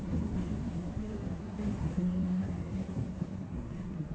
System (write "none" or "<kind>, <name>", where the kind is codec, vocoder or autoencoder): codec, SNAC